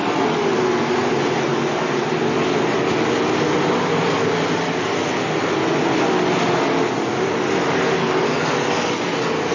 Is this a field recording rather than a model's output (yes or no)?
yes